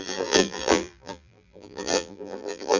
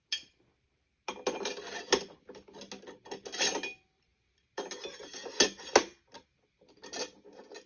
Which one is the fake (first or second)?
first